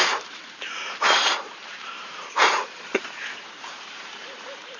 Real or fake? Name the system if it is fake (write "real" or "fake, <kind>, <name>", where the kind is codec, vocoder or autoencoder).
fake, vocoder, BigVGAN v2